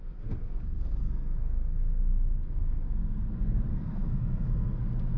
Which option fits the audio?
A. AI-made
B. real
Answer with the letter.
A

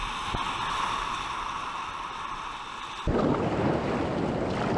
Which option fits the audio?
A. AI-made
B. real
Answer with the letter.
B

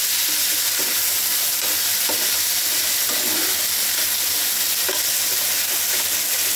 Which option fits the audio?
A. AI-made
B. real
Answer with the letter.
B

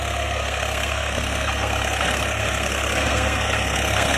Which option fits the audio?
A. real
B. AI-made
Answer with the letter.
B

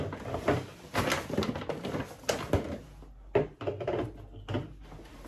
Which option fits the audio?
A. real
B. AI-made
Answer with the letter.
A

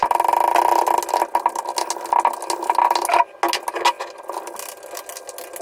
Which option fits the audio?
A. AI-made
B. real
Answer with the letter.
B